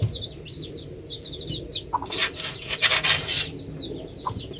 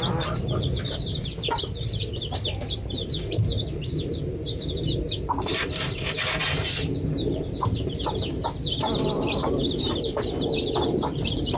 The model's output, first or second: second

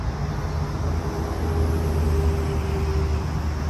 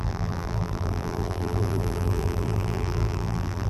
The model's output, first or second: second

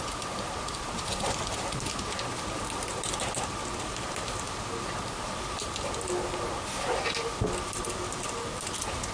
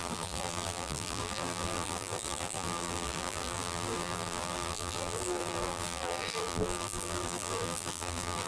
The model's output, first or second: second